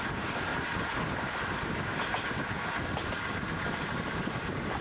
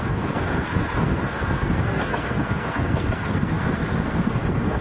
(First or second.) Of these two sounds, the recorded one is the first